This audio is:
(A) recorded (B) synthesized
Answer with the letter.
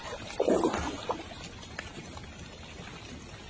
A